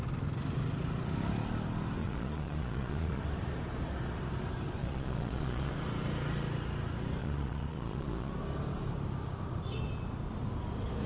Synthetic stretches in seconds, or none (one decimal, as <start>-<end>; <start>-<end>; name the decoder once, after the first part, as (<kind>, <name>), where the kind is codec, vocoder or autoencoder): 2.0-3.2 (vocoder, Vocos); 4.8-5.7; 7.2-8.3